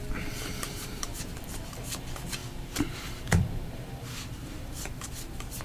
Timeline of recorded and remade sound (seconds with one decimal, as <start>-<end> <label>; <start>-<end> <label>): 0.0-5.6 remade